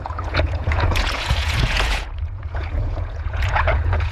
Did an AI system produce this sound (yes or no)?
yes